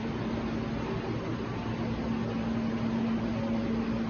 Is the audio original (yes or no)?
yes